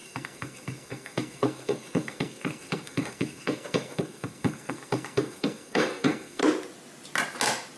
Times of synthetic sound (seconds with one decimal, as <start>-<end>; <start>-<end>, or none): 0.0-6.4

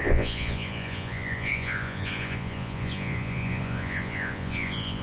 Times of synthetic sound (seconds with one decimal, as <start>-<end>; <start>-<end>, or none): 0.0-5.0

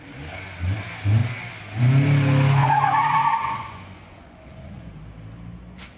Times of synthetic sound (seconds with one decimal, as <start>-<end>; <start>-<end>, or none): 2.6-4.8

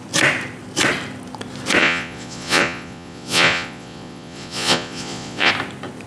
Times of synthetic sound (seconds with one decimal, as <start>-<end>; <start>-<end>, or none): 1.8-5.5

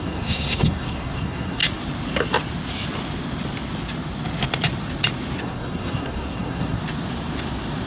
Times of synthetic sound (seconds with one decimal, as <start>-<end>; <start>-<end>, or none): 0.0-1.6; 5.4-6.8

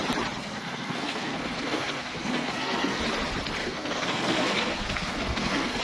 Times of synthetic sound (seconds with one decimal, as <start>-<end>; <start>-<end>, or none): 0.4-3.0; 3.6-5.8

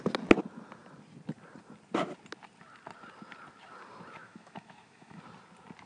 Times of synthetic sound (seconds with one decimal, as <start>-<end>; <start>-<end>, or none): 4.2-5.2

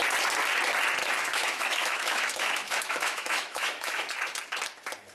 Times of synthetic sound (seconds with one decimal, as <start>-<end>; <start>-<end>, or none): 1.0-4.1